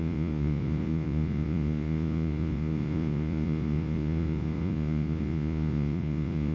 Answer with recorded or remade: remade